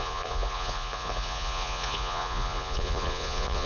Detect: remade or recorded remade